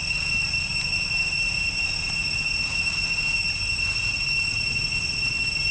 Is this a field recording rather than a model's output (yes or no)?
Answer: yes